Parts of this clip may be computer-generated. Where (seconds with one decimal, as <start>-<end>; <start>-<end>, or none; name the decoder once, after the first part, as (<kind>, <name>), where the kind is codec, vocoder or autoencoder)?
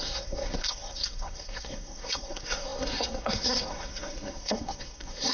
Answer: 0.0-5.3 (codec, SNAC)